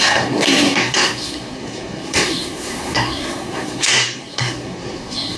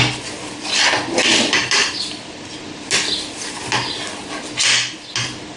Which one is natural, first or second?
second